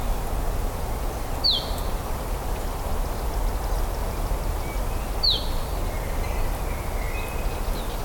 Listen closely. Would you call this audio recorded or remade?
recorded